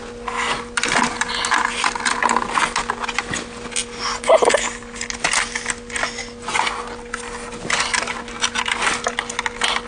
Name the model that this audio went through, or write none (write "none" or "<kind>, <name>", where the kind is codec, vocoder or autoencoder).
none